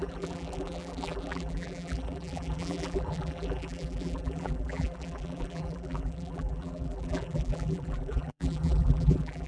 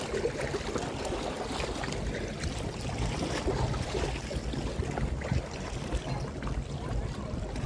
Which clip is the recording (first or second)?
second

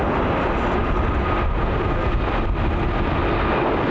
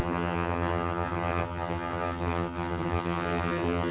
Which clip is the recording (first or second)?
first